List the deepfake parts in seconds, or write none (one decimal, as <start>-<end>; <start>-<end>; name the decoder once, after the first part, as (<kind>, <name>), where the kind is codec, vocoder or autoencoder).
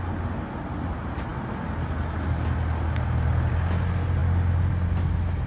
none